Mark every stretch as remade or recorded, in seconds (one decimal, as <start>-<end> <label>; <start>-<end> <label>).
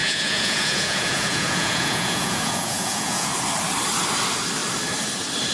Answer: 0.0-3.3 remade; 3.3-5.5 recorded